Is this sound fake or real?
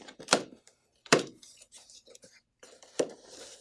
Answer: fake